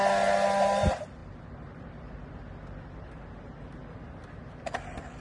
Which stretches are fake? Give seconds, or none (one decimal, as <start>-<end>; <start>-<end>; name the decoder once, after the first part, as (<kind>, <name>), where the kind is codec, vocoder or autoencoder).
none